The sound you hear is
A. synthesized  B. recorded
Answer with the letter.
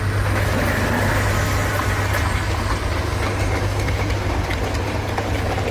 B